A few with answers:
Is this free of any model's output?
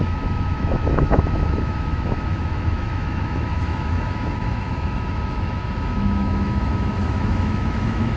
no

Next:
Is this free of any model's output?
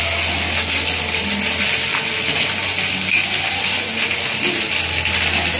yes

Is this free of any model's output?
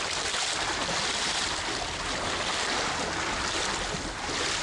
yes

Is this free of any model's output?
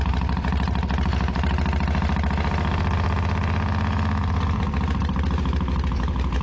yes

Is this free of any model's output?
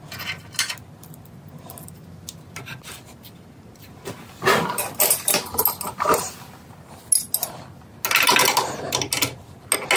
yes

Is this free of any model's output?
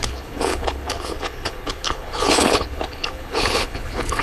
no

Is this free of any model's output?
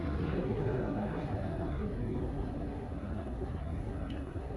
no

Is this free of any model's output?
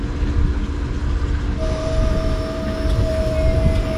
yes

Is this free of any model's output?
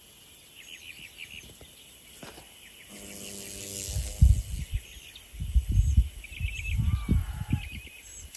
yes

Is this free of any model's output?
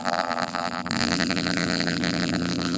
no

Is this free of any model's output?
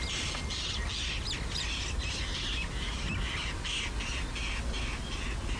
yes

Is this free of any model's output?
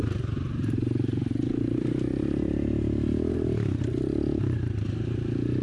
no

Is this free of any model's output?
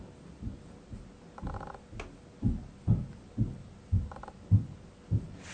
yes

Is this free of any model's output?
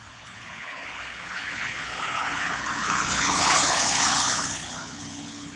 no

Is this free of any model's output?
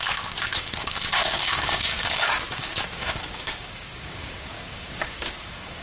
no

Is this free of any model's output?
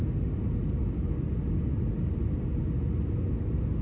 yes